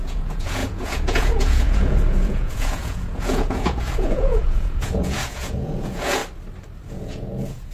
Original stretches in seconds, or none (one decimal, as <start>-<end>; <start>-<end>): 6.2-6.9